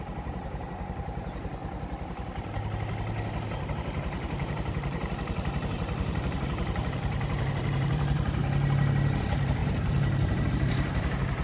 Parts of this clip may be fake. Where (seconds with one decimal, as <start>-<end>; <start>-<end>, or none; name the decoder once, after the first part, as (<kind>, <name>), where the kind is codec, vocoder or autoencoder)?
0.0-1.6 (vocoder, BigVGAN v2); 3.7-5.0; 5.6-8.4; 9.2-11.4